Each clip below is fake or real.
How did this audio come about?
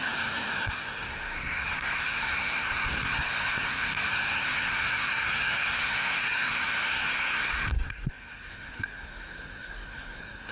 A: fake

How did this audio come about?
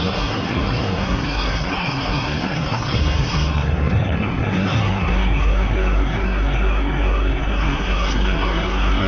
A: fake